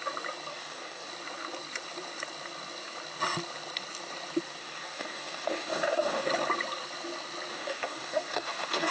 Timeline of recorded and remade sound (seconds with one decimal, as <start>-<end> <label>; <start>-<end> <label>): 0.0-0.5 recorded; 0.5-1.1 remade; 1.1-4.6 recorded; 4.6-6.3 remade; 6.3-7.5 recorded; 7.5-8.9 remade